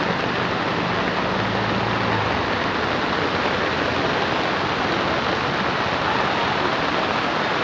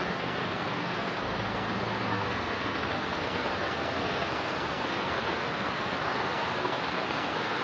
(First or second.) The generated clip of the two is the second